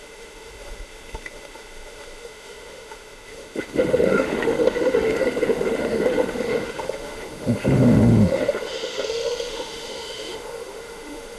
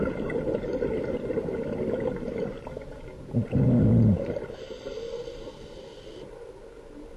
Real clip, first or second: second